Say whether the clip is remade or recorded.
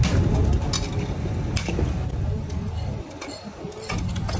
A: recorded